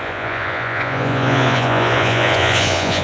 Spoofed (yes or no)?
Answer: yes